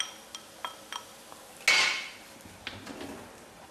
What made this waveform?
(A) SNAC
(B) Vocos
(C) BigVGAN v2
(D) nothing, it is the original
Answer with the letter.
D